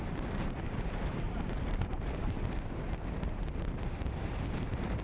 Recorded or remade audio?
remade